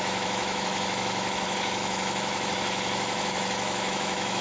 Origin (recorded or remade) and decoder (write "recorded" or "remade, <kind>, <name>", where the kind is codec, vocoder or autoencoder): remade, autoencoder, DAC-VAE